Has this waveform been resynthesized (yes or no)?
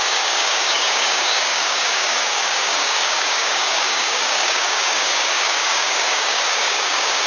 yes